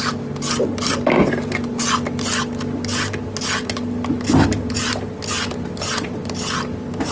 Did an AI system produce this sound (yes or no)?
no